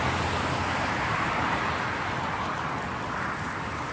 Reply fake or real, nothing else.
fake